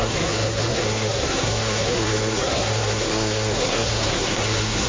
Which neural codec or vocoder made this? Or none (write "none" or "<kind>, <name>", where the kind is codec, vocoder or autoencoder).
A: codec, SNAC